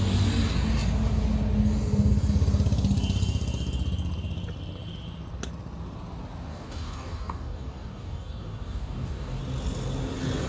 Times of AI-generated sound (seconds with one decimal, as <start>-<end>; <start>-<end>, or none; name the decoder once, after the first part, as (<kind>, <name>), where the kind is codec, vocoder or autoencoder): 6.5-9.4 (codec, DAC)